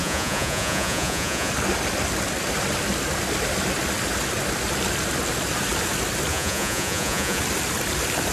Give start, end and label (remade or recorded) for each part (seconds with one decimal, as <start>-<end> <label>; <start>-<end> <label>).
0.0-1.5 remade; 1.5-6.3 recorded; 6.3-7.4 remade; 7.4-8.3 recorded